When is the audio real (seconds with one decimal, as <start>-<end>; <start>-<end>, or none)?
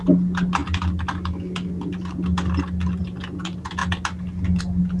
0.0-5.0